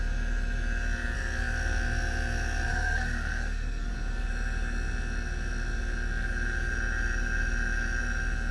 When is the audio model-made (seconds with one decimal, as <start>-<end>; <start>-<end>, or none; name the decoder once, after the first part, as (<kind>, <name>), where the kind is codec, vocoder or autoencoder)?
2.7-3.9 (codec, SNAC)